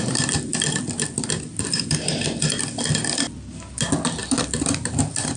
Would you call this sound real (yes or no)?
yes